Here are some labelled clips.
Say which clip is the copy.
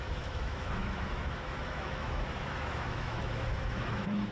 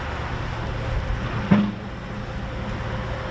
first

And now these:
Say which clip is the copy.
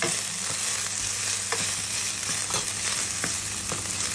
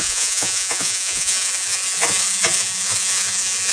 second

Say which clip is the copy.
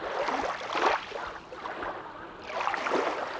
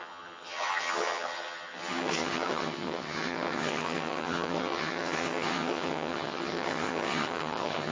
second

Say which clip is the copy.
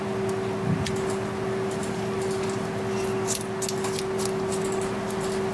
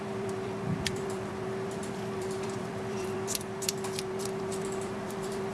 second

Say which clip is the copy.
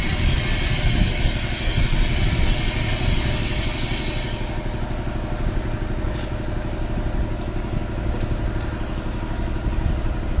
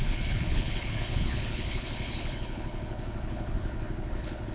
second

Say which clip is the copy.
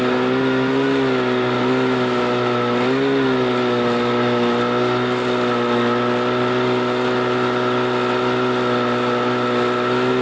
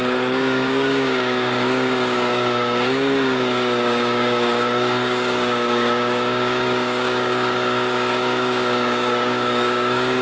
second